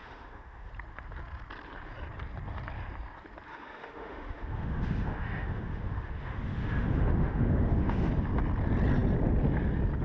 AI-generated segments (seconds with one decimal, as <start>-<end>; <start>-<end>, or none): 0.0-0.7; 3.5-8.1